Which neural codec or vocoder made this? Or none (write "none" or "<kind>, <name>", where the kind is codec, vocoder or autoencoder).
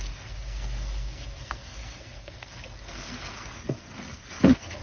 codec, SNAC